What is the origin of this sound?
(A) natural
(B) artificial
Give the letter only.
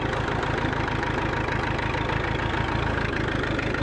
A